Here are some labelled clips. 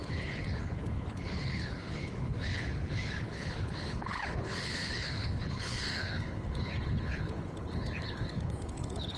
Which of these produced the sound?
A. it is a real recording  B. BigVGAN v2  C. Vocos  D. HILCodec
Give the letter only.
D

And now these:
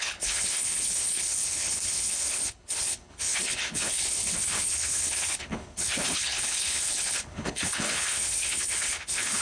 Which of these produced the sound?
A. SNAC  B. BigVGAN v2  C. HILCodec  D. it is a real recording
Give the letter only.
C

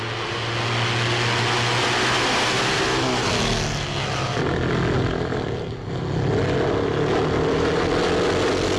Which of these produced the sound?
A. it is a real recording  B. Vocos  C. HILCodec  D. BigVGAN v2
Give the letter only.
A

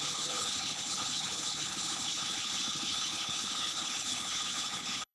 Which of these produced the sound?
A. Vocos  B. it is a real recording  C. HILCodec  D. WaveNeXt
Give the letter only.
C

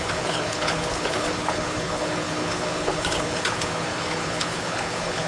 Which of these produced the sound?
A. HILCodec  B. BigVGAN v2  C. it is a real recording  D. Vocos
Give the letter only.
A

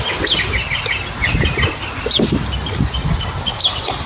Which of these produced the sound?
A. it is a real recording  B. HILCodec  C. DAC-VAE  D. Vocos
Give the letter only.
A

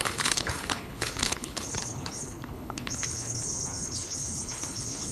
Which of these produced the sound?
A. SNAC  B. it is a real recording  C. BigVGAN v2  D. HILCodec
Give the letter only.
D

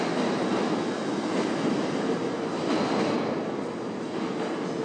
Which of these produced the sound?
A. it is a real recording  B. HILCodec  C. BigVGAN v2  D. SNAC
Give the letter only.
A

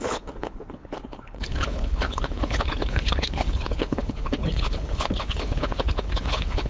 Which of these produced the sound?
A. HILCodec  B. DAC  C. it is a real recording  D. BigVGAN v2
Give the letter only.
A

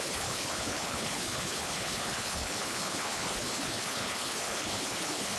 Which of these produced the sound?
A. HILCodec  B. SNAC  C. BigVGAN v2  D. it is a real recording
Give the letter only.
A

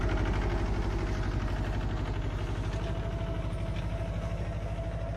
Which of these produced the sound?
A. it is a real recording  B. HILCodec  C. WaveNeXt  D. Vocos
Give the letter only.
A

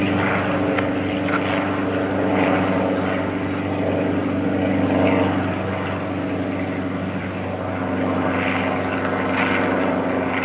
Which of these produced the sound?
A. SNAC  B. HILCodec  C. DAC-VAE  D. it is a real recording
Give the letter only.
D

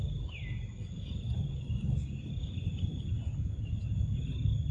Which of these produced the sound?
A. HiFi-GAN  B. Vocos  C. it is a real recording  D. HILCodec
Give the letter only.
C